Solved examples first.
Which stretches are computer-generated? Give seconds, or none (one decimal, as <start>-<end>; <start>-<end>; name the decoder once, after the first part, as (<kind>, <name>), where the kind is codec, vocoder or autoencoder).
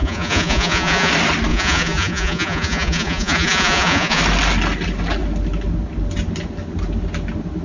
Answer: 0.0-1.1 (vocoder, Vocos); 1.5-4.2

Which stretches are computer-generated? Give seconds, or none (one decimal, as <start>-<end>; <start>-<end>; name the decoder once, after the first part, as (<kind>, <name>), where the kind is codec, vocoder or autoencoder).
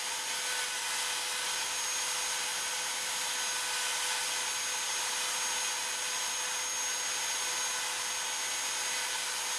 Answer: none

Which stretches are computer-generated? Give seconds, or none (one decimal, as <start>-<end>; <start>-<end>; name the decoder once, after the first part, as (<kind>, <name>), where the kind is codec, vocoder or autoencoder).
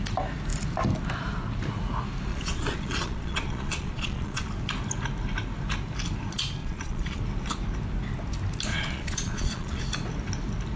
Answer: 2.3-4.4 (vocoder, Vocos); 6.6-7.2; 8.7-9.8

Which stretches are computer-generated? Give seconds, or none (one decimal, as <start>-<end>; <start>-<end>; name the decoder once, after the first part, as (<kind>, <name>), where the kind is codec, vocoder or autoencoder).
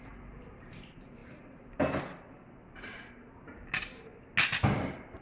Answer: none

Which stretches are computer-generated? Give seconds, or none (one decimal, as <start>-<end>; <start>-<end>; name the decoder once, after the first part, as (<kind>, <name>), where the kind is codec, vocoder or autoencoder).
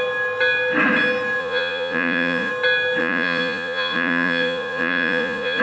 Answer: 1.4-2.5 (vocoder, Vocos); 3.0-5.6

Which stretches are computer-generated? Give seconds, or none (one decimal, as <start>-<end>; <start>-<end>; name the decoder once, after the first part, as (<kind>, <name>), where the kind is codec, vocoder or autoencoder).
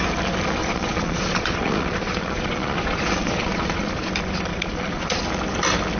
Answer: 0.6-4.1 (vocoder, Vocos); 4.5-5.2